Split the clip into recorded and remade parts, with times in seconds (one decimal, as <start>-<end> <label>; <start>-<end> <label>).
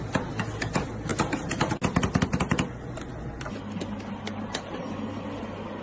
0.0-5.8 recorded